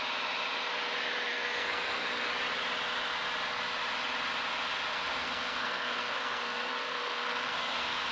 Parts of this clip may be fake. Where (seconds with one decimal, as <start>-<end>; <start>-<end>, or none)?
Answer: 1.3-2.3; 4.9-8.1